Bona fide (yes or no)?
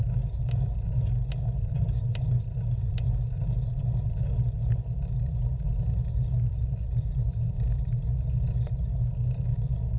yes